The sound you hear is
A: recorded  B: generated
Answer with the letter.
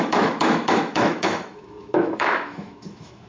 B